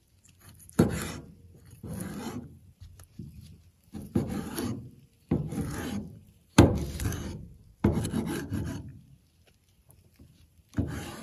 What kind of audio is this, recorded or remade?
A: remade